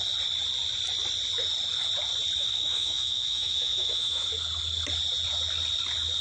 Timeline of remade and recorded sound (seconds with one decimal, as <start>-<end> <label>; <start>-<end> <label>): 0.0-2.4 recorded; 2.4-4.3 remade; 4.3-6.2 recorded